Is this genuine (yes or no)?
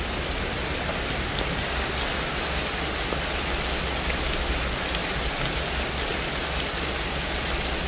yes